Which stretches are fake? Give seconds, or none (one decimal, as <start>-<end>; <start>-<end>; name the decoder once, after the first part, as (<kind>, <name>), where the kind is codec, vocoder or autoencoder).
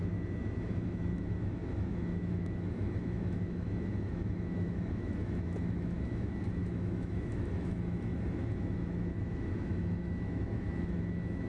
0.0-11.5 (autoencoder, DAC-VAE)